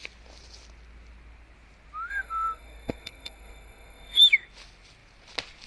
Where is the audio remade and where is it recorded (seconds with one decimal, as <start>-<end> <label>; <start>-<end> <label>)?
0.0-2.1 recorded; 2.1-4.2 remade; 4.2-5.7 recorded